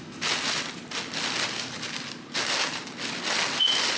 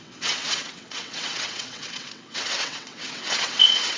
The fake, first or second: second